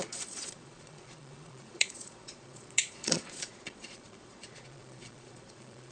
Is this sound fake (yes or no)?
yes